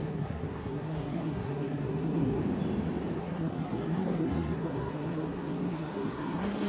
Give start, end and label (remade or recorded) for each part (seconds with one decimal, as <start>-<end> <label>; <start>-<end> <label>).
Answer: 0.0-2.4 remade; 2.4-3.2 recorded; 3.2-6.7 remade